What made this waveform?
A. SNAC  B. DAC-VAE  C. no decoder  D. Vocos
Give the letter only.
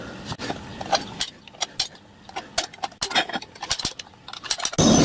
C